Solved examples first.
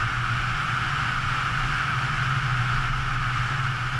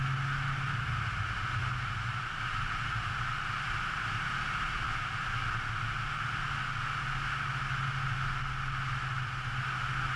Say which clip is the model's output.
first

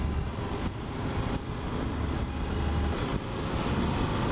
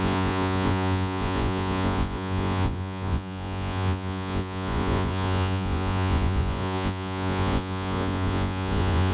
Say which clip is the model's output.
second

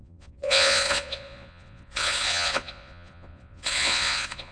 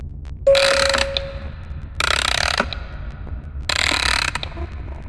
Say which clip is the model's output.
first